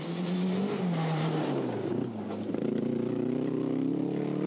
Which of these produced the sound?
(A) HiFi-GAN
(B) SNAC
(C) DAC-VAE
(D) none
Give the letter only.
D